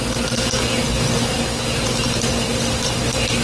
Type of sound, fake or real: real